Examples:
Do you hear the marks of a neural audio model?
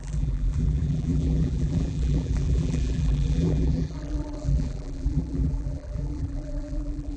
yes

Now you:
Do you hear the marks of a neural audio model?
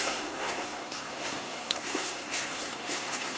yes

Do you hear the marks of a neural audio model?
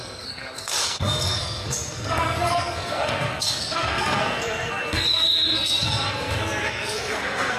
yes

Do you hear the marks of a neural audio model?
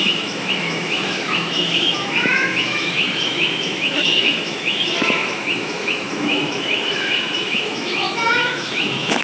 yes